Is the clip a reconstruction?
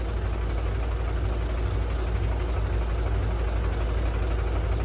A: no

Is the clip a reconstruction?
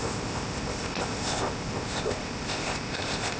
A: yes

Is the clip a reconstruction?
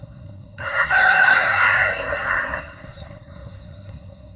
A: yes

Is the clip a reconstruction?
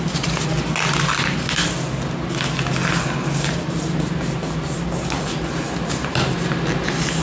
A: no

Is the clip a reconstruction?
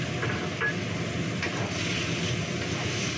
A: no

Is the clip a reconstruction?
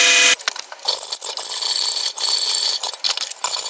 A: no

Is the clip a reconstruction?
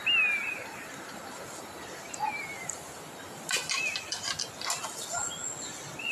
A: no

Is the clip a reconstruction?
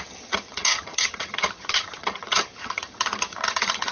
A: yes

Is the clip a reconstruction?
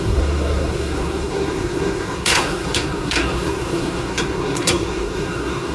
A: yes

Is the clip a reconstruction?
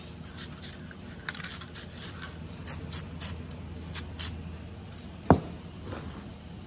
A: no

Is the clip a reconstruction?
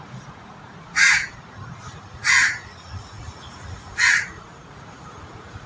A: yes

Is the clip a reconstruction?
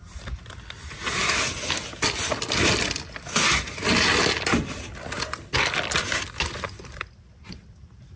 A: no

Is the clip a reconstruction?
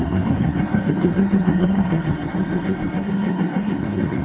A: yes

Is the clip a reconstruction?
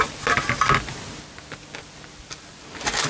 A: no